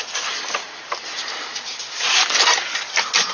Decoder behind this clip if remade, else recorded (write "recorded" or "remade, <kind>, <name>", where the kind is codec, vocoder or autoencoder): recorded